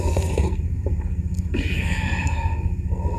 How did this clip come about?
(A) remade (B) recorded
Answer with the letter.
A